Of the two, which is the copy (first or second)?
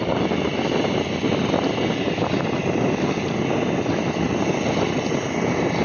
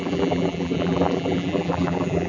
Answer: second